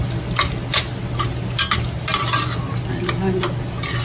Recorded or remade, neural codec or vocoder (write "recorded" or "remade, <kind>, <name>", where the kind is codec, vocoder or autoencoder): recorded